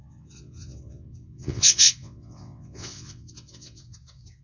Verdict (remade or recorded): remade